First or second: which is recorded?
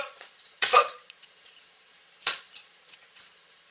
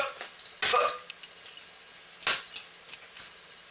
second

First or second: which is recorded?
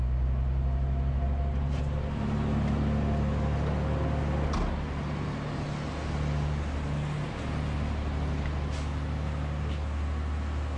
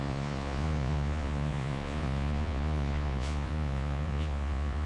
first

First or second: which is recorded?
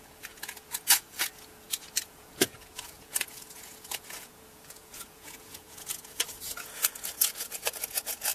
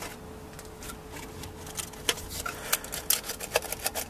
second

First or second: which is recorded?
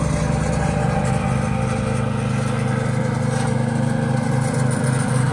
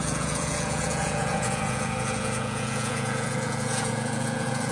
first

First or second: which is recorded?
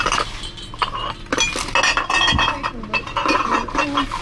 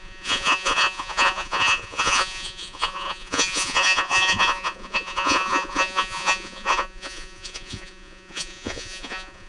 first